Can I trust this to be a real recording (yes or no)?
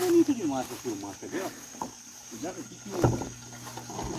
yes